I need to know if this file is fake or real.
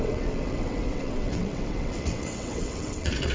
fake